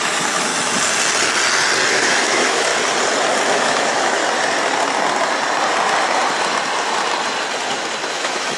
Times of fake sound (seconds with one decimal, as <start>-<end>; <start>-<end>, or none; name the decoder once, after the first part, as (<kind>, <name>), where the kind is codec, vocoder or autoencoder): 0.0-0.5 (autoencoder, DAC-VAE); 1.9-2.7; 3.5-4.2; 8.1-8.6